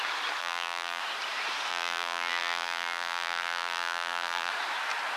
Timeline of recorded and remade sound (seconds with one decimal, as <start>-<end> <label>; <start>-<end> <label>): 0.0-0.4 recorded; 0.4-1.0 remade; 1.0-1.7 recorded; 1.7-4.5 remade; 4.5-5.2 recorded